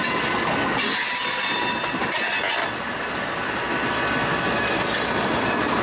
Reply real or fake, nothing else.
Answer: real